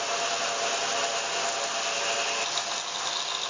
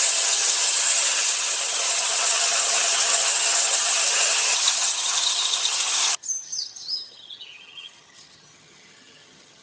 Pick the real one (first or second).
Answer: first